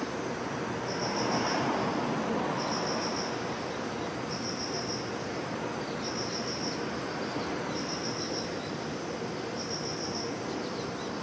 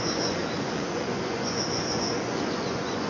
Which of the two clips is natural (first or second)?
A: first